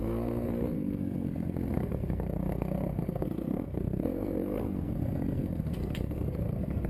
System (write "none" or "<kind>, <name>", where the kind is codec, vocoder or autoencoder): codec, SNAC